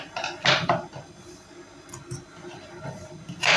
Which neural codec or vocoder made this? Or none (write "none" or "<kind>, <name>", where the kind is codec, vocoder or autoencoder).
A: none